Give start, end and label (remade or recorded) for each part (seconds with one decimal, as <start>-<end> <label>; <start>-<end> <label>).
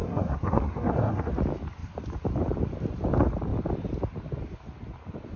0.0-1.3 remade; 1.3-5.4 recorded